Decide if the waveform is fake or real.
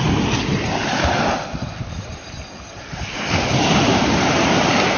real